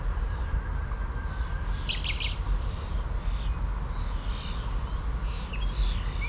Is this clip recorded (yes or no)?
yes